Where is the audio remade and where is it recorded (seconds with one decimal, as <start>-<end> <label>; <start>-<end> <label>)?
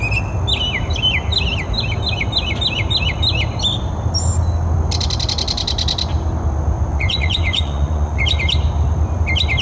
0.0-6.9 recorded; 6.9-8.2 remade; 8.2-9.6 recorded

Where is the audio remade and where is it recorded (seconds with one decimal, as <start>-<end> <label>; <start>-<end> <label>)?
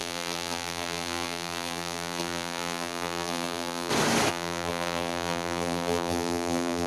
0.0-3.9 remade; 3.9-4.3 recorded; 4.3-6.9 remade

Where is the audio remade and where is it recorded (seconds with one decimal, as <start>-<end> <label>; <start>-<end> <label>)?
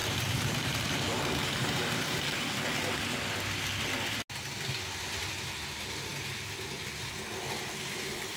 0.0-2.4 remade; 2.4-8.4 recorded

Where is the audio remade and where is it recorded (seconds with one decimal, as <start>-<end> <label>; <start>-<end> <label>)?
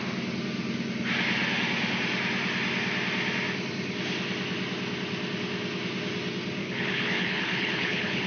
0.0-6.6 recorded; 6.6-8.3 remade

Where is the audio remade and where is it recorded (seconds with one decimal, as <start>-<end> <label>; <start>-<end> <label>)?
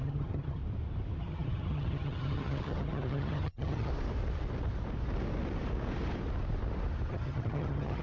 0.0-0.6 remade; 0.6-1.2 recorded; 1.2-3.9 remade; 3.9-7.1 recorded; 7.1-8.0 remade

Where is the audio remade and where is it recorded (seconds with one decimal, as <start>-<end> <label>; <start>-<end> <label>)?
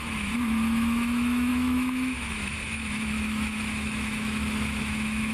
0.0-5.3 remade